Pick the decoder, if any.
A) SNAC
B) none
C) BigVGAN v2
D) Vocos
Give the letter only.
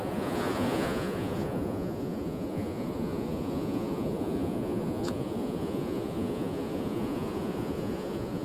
D